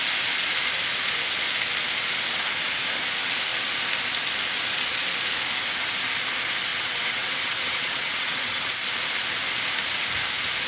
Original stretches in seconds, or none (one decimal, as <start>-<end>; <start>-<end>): 0.0-6.7; 8.7-10.7